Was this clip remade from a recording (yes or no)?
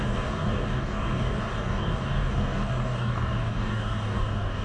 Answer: yes